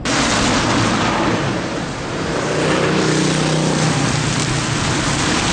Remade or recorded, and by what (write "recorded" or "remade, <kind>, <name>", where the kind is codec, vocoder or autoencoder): recorded